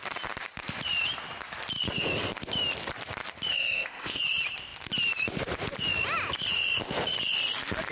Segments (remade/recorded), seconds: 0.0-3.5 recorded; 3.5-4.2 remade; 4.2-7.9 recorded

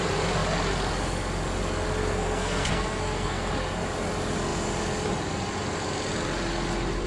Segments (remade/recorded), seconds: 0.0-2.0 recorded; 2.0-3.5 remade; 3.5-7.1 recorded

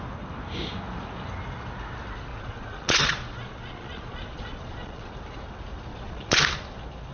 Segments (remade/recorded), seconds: 0.0-2.3 recorded; 2.3-5.1 remade; 5.1-5.9 recorded; 5.9-6.4 remade; 6.4-7.1 recorded